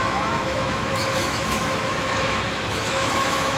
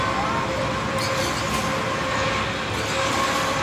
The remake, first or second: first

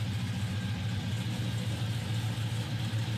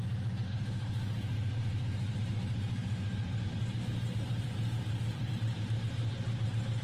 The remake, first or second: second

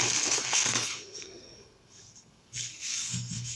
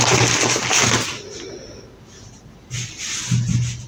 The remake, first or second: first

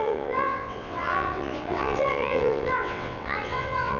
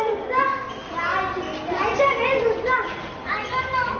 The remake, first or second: first